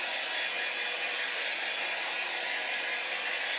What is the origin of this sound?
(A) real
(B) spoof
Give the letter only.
A